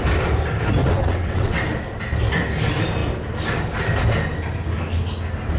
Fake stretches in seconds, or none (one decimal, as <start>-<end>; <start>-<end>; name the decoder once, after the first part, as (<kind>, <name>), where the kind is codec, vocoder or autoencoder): 0.8-1.6 (vocoder, WaveNeXt)